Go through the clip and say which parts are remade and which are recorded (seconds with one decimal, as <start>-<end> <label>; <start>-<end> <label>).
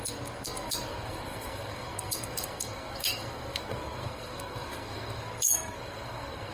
0.0-6.5 remade